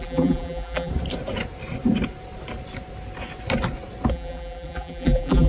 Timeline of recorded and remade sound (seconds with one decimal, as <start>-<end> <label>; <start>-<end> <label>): 0.0-0.9 remade; 0.9-4.1 recorded; 4.1-5.5 remade